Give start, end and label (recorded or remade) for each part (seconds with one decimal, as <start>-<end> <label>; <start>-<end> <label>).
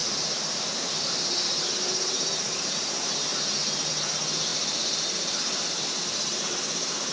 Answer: 0.0-7.1 recorded